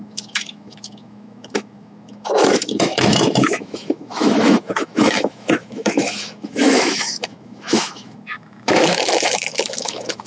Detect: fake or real fake